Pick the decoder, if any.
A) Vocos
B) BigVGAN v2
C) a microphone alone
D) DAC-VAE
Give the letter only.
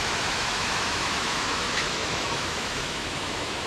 D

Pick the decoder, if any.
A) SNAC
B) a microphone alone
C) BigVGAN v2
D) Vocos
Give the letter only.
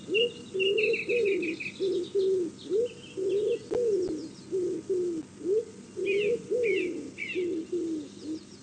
B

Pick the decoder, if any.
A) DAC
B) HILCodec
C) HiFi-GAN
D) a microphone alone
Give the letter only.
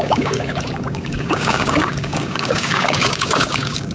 A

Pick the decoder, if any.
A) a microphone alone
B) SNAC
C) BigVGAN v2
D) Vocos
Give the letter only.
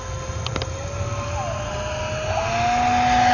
A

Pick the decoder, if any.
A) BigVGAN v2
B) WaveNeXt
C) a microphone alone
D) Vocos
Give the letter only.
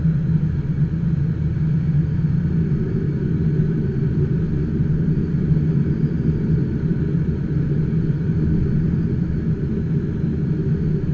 C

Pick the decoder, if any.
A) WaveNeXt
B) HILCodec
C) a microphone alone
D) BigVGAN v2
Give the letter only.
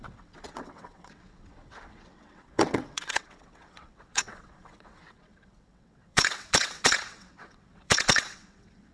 A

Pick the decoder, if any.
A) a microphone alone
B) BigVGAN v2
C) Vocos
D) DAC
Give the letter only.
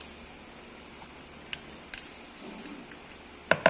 A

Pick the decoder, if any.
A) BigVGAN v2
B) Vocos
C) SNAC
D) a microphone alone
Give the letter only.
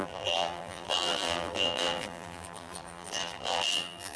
A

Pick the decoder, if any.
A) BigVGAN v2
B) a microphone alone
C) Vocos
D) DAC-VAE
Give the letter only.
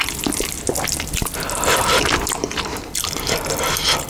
B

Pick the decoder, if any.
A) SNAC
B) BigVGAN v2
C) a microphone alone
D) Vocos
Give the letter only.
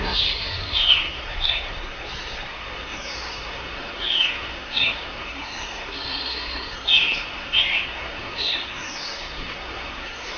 A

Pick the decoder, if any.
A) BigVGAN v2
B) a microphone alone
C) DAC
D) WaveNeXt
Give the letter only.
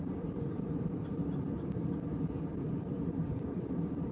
A